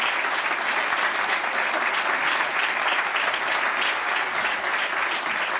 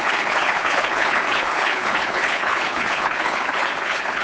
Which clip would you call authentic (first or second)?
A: first